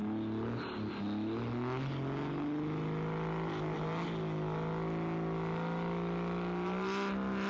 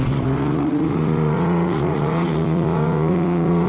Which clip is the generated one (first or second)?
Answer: second